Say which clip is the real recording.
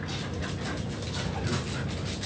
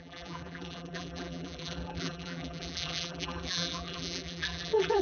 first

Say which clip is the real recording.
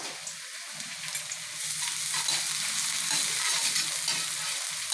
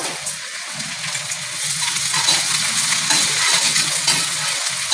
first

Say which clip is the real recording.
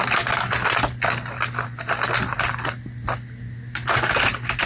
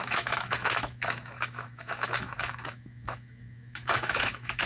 first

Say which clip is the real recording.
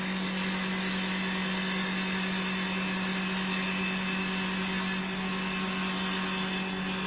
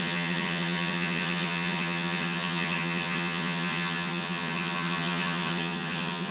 first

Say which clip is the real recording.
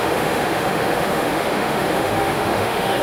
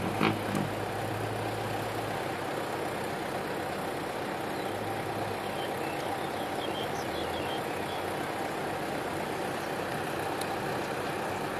second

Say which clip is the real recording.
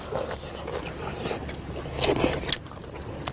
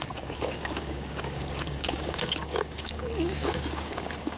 first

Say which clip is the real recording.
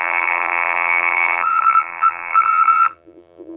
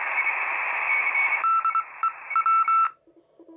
second